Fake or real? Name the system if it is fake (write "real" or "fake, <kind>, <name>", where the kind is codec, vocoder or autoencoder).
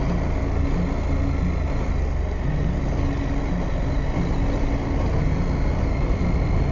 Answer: real